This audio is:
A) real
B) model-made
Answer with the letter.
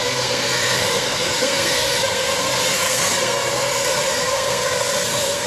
B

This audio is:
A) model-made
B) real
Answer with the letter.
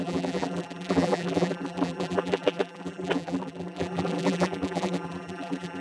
A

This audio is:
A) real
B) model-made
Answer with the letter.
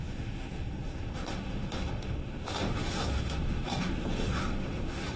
B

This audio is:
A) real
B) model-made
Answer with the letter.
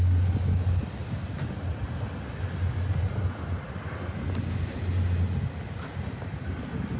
A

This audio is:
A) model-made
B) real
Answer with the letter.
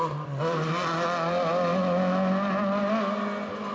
B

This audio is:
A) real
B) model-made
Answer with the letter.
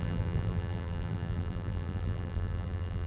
B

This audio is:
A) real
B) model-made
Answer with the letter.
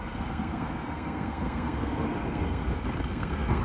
B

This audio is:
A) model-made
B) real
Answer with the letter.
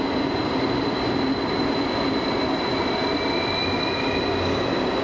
B